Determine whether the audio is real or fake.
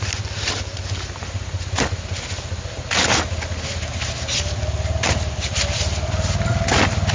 real